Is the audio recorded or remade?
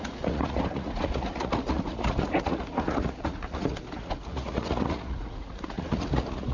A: remade